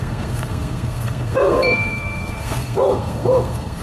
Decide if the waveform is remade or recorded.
remade